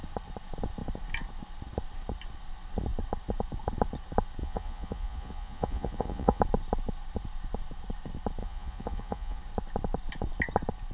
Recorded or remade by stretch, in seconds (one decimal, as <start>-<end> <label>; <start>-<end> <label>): 0.0-4.4 recorded; 4.4-6.4 remade; 6.4-8.4 recorded; 8.4-9.4 remade; 9.4-10.9 recorded